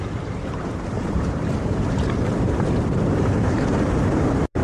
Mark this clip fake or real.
fake